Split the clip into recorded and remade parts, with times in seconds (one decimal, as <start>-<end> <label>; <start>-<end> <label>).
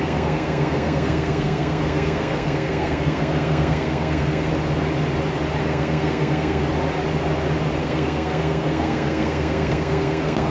0.0-4.5 remade; 4.5-5.6 recorded; 5.6-6.6 remade; 6.6-7.8 recorded; 7.8-10.5 remade